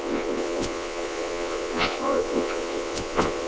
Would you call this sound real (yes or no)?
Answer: no